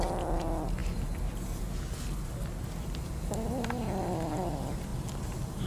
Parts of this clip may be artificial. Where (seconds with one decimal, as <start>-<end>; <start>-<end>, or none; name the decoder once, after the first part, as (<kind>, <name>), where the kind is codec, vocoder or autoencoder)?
none